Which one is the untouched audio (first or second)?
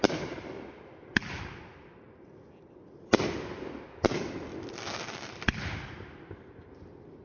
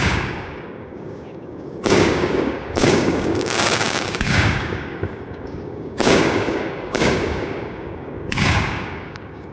first